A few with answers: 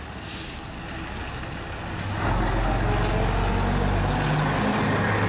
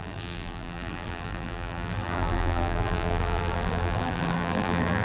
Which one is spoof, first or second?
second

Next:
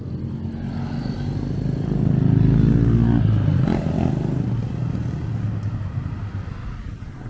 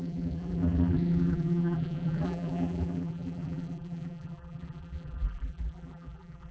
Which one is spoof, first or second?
second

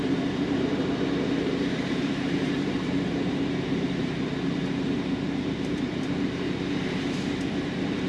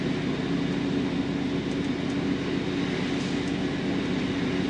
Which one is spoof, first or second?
first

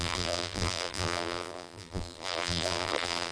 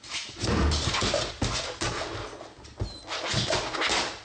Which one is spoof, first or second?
first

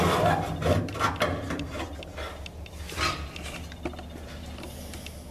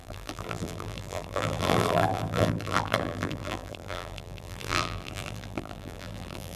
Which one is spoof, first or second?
second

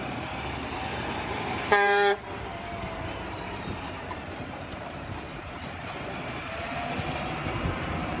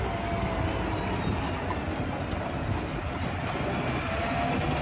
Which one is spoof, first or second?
first